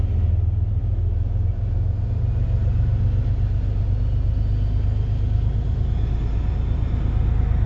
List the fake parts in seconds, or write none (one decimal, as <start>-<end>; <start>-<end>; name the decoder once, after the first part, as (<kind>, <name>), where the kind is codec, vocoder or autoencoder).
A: 0.8-2.2 (vocoder, Vocos)